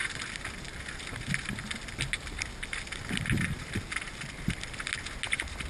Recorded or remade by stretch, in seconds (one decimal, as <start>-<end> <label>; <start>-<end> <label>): 0.0-5.7 recorded